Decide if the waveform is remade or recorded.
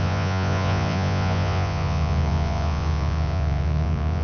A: remade